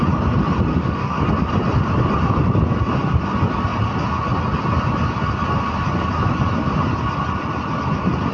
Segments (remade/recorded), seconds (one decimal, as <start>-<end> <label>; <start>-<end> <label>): 0.0-0.7 recorded; 0.7-1.3 remade; 1.3-8.3 recorded